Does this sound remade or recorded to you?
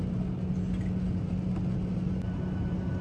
recorded